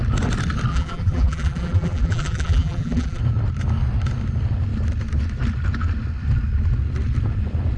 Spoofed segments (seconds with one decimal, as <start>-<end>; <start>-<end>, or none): 0.7-3.2